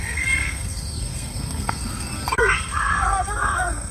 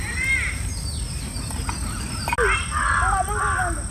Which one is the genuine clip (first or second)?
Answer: second